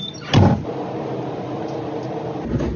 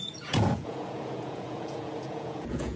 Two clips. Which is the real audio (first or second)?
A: first